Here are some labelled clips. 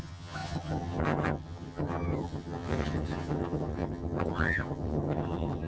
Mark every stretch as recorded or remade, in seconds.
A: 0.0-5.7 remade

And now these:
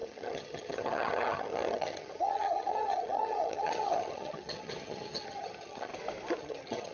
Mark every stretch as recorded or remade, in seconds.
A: 0.0-5.9 remade; 5.9-6.4 recorded; 6.4-6.9 remade